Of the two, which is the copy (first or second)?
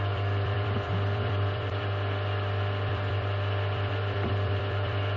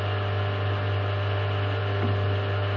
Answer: first